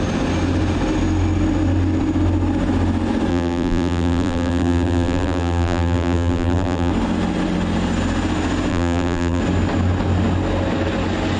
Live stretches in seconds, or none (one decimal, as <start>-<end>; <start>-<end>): 0.0-3.3; 6.9-8.7; 9.4-11.4